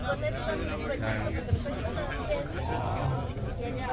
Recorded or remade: recorded